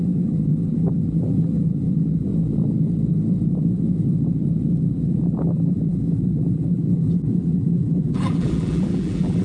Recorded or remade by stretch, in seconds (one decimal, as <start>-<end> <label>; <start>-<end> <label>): 0.0-2.3 remade; 2.3-4.8 recorded; 4.8-9.4 remade